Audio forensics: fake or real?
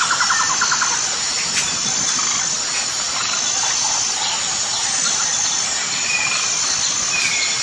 real